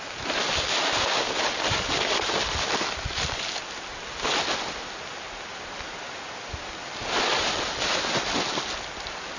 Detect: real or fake real